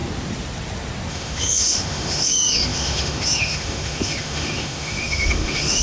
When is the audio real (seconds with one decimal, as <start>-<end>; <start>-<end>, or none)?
0.0-1.1